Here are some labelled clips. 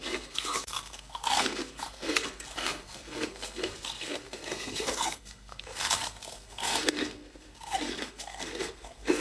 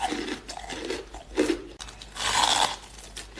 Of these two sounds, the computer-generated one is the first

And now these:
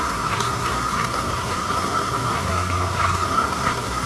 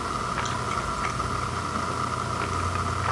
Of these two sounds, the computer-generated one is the first